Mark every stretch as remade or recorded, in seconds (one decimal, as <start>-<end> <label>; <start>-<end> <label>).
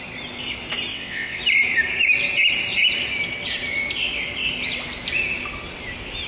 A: 0.0-0.9 recorded; 0.9-1.4 remade; 1.4-6.3 recorded